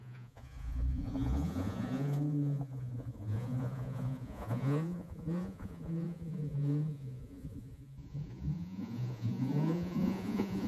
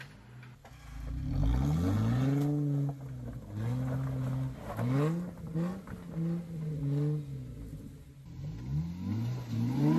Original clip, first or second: second